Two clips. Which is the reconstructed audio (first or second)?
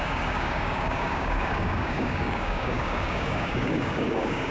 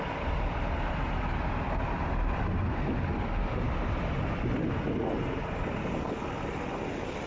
first